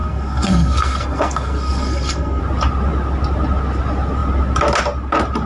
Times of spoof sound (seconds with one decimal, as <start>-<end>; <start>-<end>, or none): 0.0-2.4